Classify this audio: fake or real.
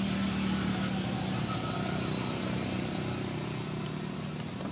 real